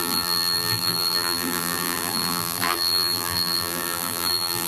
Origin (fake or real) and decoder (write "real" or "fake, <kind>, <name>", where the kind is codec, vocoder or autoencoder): fake, vocoder, BigVGAN v2